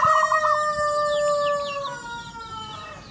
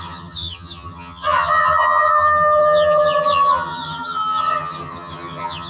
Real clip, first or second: first